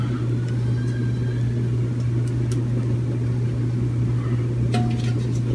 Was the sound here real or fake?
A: real